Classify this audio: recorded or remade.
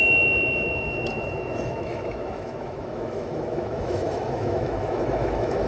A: remade